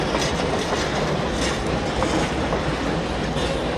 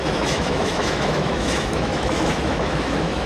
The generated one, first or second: second